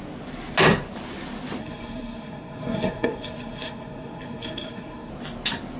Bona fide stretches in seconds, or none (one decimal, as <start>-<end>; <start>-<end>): 0.0-1.6; 5.1-5.8